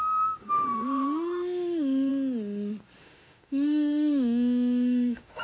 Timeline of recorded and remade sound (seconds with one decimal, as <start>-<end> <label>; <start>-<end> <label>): 0.0-2.1 remade; 2.1-3.0 recorded; 3.0-5.4 remade